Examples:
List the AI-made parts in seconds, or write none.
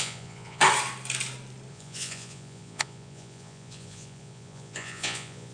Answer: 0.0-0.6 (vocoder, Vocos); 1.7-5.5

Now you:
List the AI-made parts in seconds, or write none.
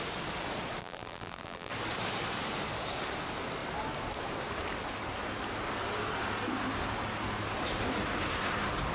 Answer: 0.8-1.7 (vocoder, BigVGAN v2)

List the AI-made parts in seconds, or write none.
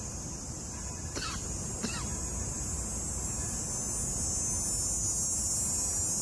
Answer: 0.0-2.3 (vocoder, BigVGAN v2)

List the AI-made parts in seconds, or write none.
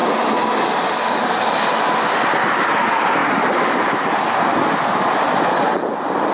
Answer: none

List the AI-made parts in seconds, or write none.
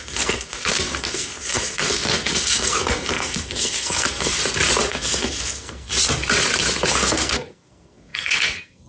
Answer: 0.0-4.4 (codec, SNAC); 4.9-5.9; 6.9-8.9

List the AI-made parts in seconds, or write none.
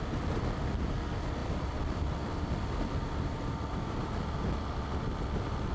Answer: 1.4-3.5 (vocoder, BigVGAN v2)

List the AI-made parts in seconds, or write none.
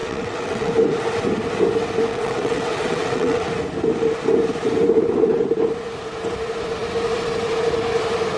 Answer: 0.0-0.7 (vocoder, WaveNeXt); 2.1-3.5